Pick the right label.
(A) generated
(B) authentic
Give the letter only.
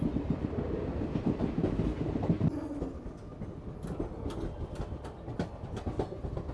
B